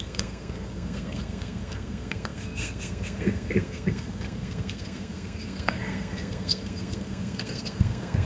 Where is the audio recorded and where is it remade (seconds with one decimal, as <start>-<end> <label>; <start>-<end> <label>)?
0.0-8.3 remade